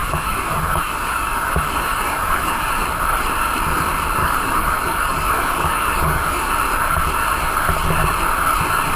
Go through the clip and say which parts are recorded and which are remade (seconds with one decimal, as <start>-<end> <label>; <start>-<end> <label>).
0.0-2.7 remade; 2.7-4.2 recorded; 4.2-6.5 remade; 6.5-9.0 recorded